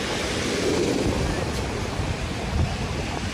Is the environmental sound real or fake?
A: real